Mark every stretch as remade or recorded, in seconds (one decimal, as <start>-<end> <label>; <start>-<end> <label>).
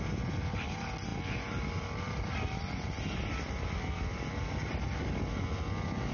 0.0-6.1 recorded